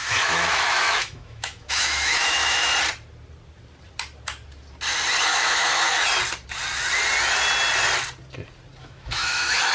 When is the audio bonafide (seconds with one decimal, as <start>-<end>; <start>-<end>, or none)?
2.7-5.3; 6.0-8.8